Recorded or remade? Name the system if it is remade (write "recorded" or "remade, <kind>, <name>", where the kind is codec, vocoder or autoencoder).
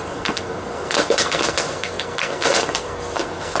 remade, codec, SNAC